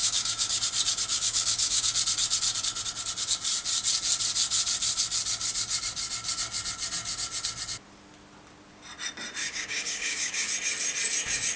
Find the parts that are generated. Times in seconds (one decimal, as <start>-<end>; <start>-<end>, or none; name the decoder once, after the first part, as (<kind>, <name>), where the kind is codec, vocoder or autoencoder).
0.0-0.6 (codec, DAC); 1.1-1.9; 9.4-10.5